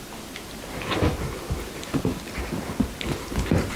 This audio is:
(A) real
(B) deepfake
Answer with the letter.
A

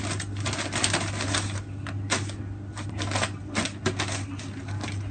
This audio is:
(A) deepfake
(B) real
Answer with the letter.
B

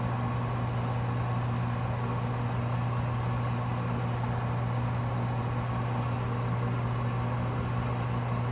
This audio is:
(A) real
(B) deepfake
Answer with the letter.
A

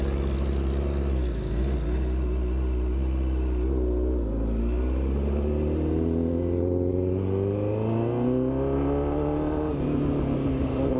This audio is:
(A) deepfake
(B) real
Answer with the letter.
B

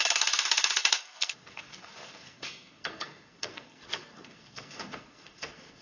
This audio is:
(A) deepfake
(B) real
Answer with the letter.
A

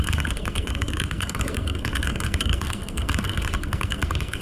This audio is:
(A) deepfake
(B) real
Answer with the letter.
A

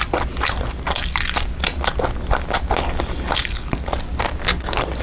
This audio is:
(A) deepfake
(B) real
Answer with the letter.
B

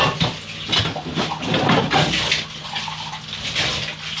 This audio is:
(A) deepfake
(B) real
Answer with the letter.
B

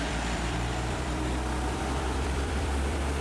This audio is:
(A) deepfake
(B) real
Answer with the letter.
A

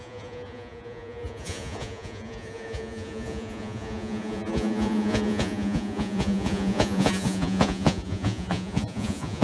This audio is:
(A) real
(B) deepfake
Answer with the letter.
B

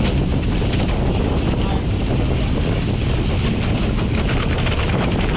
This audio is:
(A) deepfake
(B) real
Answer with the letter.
B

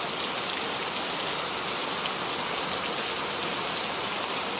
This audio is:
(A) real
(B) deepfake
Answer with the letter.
A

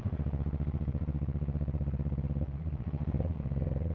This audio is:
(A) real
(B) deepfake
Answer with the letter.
B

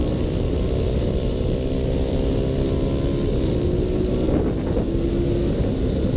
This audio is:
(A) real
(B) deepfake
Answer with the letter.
A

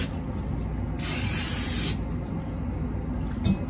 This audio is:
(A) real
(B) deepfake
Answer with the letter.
A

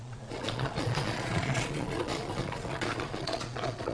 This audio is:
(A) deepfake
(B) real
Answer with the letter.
A